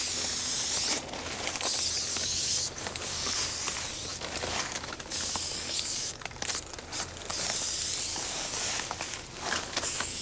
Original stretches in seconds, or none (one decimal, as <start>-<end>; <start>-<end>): 0.0-2.1; 3.4-4.1; 6.4-8.1